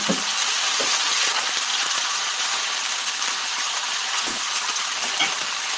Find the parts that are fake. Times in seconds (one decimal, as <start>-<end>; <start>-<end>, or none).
1.7-2.7; 3.5-4.8